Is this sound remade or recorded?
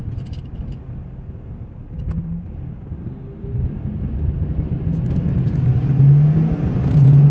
recorded